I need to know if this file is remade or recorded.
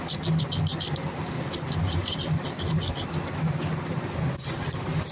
recorded